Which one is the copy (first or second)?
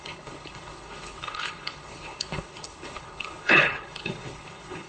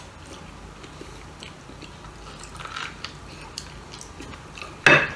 first